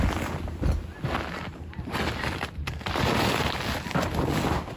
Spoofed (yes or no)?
no